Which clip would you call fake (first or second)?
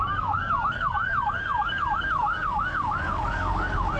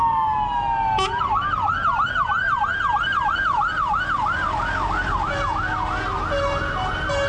first